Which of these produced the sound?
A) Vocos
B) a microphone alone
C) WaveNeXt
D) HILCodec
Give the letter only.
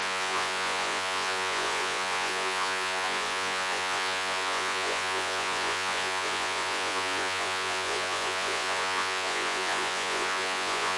A